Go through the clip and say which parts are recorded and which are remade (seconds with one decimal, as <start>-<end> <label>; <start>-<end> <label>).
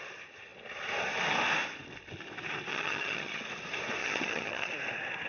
0.0-2.7 recorded; 2.7-3.4 remade; 3.4-4.0 recorded; 4.0-4.7 remade; 4.7-5.3 recorded